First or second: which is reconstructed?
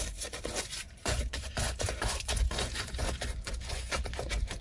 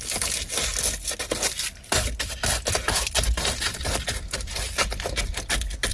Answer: first